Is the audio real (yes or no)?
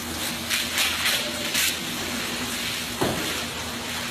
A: yes